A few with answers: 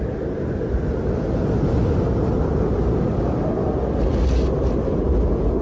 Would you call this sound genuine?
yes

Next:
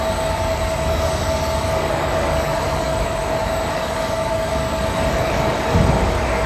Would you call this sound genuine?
no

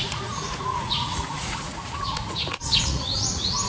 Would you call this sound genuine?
no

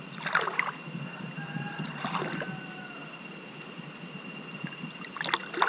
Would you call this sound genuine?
yes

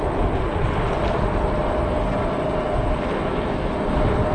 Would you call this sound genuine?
yes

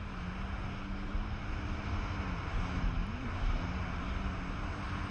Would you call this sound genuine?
yes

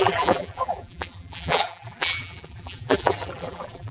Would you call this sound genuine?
no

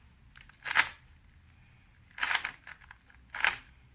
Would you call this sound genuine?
yes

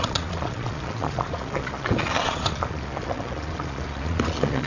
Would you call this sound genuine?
no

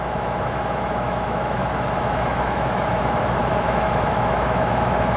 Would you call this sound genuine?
no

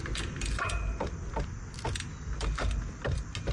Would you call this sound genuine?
yes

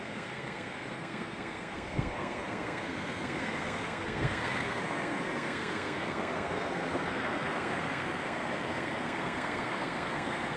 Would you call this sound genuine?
no